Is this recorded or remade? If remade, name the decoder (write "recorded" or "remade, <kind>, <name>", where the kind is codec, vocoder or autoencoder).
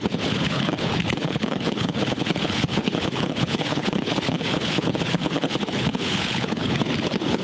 remade, codec, HILCodec